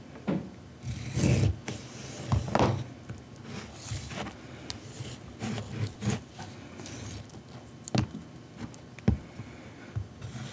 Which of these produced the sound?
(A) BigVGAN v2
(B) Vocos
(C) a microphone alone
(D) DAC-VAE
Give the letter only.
C